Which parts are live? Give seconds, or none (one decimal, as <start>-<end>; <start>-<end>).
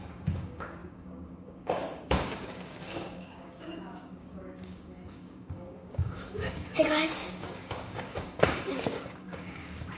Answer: none